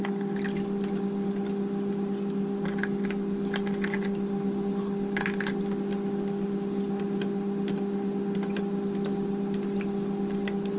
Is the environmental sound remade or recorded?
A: recorded